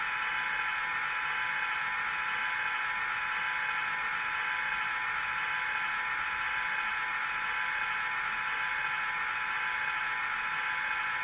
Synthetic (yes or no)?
no